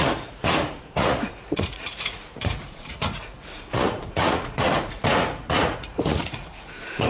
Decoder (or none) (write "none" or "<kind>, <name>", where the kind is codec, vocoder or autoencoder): vocoder, Vocos